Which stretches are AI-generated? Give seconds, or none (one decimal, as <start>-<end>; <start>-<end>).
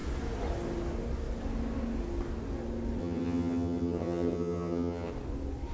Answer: 3.0-5.1